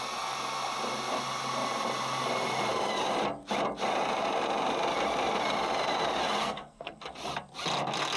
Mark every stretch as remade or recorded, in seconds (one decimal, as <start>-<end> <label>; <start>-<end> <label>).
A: 0.0-6.4 recorded; 6.4-7.0 remade; 7.0-8.2 recorded